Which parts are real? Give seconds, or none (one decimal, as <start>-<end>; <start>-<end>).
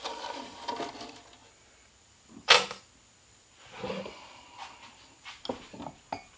0.0-6.4